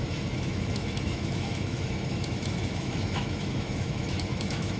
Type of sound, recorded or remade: remade